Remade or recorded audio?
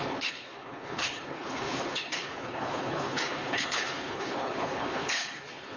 remade